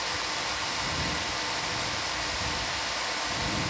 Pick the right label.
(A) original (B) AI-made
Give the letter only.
A